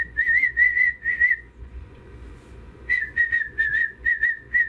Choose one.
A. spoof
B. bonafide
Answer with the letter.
A